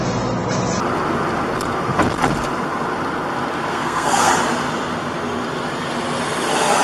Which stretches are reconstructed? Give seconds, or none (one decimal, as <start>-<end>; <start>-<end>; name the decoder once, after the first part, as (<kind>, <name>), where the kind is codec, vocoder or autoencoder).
3.7-4.3 (codec, SNAC)